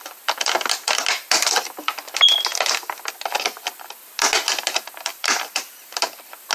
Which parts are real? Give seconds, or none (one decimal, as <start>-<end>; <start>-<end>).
0.0-5.1; 5.8-6.5